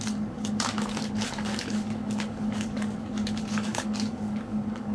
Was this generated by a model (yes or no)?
yes